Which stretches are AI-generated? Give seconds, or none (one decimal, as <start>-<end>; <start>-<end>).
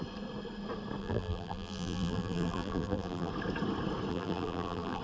1.0-3.3; 4.1-5.0